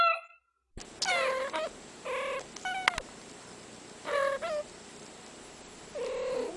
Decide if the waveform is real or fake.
real